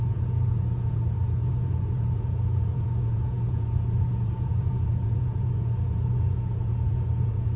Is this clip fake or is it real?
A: fake